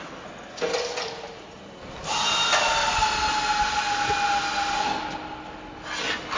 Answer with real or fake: real